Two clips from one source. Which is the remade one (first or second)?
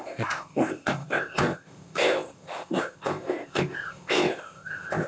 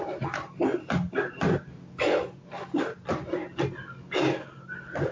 first